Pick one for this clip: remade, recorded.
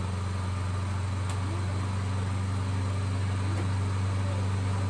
recorded